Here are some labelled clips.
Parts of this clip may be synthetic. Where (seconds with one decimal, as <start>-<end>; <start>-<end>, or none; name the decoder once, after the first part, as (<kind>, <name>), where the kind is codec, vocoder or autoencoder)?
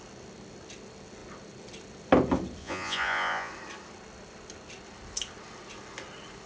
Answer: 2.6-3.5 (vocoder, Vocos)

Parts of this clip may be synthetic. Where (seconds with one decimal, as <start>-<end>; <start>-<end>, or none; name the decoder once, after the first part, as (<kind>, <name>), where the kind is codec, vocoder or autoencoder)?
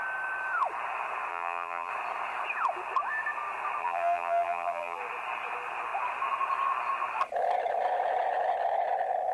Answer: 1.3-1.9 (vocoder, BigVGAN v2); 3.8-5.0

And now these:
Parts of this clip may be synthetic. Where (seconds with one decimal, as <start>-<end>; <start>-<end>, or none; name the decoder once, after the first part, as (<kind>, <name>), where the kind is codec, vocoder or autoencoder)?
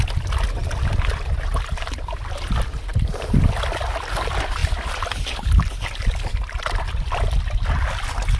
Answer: none